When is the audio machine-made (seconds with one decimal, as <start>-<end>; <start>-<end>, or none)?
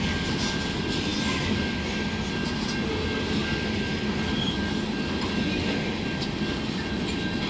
none